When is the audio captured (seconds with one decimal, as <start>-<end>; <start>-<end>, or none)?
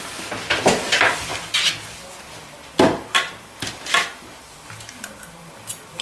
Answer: 0.0-6.0